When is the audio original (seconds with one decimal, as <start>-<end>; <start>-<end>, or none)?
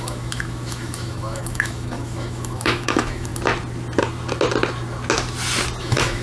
3.3-5.8